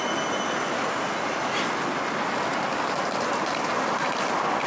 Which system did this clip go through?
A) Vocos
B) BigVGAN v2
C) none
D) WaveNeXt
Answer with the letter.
C